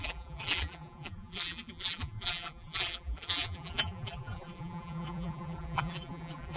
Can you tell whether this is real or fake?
fake